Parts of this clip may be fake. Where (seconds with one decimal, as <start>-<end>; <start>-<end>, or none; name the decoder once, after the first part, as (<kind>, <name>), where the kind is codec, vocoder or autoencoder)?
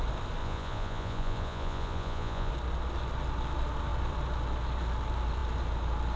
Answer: 0.4-2.5 (vocoder, Vocos)